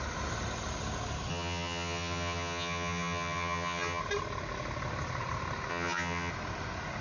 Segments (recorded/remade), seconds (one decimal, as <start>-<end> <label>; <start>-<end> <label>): 0.0-1.3 recorded; 1.3-4.0 remade; 4.0-5.7 recorded; 5.7-6.3 remade; 6.3-7.0 recorded